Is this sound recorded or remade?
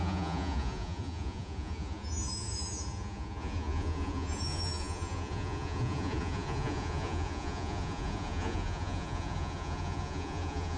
remade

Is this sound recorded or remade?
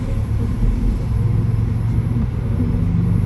recorded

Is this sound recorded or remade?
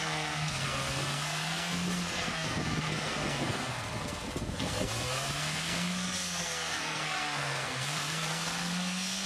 remade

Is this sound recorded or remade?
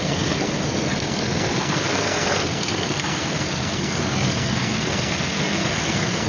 remade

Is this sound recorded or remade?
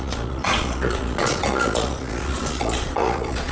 remade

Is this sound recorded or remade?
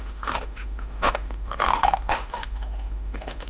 remade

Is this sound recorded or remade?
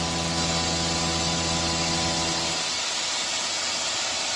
recorded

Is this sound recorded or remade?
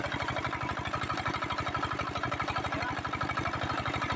recorded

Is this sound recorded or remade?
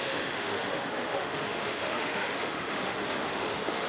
remade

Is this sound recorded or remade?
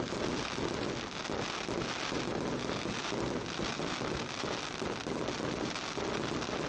recorded